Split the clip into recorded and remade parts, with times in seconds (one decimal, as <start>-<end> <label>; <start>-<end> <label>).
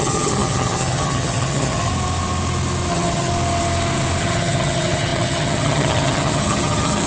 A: 0.0-1.9 remade; 1.9-2.9 recorded; 2.9-3.3 remade; 3.3-4.2 recorded; 4.2-7.1 remade